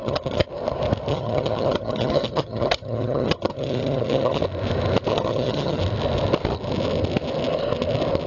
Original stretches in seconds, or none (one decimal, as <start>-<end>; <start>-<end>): 0.5-1.1; 4.4-5.1; 5.8-8.3